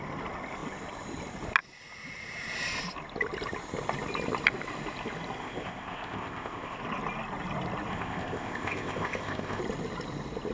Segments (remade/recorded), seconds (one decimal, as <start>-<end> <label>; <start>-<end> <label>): 0.0-5.4 recorded; 5.4-6.8 remade; 6.8-7.9 recorded; 7.9-9.6 remade; 9.6-10.5 recorded